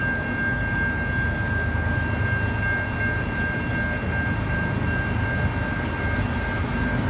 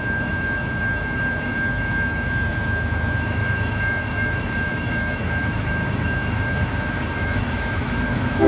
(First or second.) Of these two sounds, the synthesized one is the second